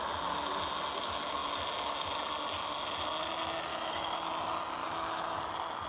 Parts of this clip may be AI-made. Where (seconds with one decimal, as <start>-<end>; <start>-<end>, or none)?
3.7-4.3; 4.8-5.4